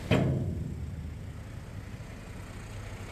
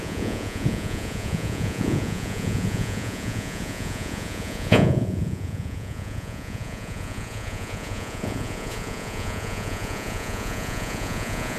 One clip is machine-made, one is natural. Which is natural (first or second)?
first